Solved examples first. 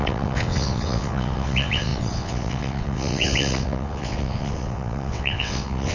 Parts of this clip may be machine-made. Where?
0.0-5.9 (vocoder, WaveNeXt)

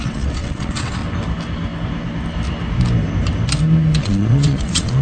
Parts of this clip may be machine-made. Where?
0.0-1.0 (vocoder, WaveNeXt); 4.0-5.0

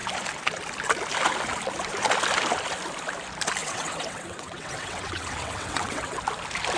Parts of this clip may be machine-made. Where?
3.6-6.2 (vocoder, WaveNeXt)

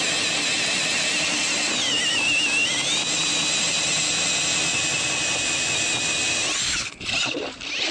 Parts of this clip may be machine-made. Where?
none

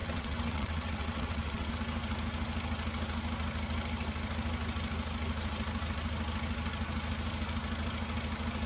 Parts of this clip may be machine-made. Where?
0.0-1.7 (vocoder, WaveNeXt)

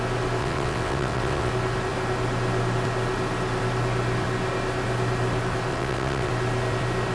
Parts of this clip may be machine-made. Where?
0.4-1.5 (vocoder, WaveNeXt); 5.7-6.3